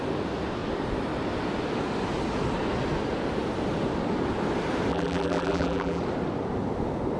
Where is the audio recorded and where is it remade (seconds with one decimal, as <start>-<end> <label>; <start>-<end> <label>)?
0.0-4.9 recorded; 4.9-6.0 remade; 6.0-7.2 recorded